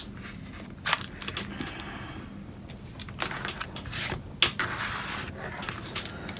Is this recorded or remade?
recorded